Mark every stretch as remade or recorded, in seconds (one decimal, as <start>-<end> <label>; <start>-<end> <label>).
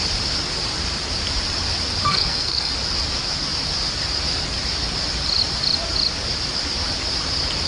0.0-2.1 recorded; 2.1-2.7 remade; 2.7-7.7 recorded